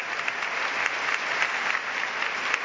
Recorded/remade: recorded